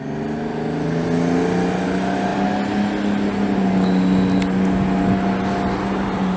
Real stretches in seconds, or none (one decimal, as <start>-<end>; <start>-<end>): 0.0-6.4